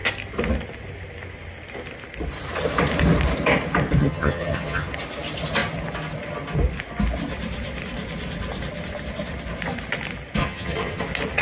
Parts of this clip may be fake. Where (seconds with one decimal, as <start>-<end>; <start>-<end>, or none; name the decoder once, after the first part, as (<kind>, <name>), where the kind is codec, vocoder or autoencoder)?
4.0-4.9 (vocoder, HiFi-GAN); 10.4-11.0